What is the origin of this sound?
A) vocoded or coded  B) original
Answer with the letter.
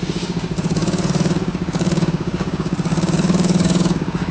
A